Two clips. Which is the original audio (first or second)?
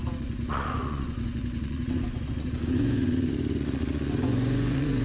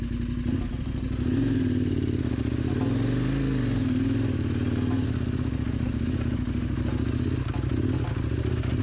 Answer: second